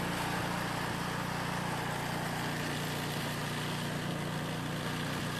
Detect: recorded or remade recorded